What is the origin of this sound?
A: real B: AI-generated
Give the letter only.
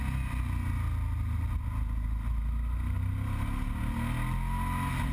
A